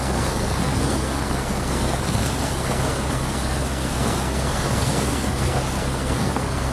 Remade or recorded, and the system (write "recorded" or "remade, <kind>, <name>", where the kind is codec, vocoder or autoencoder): remade, codec, SNAC